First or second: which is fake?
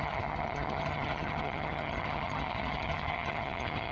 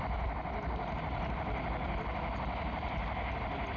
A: first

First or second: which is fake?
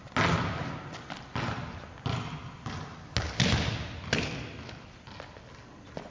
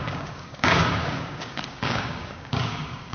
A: second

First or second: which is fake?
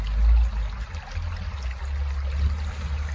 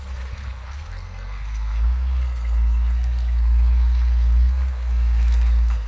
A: second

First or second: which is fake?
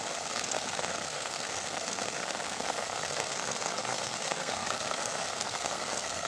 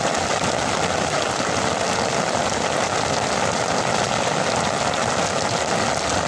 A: first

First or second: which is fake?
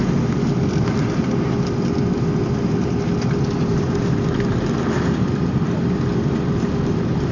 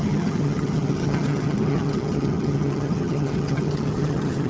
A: second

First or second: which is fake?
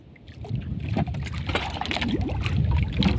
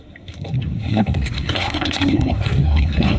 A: second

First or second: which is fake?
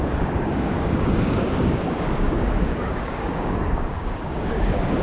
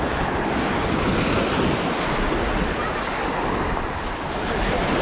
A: first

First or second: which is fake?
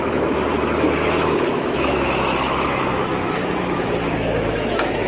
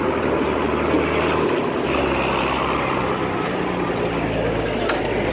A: first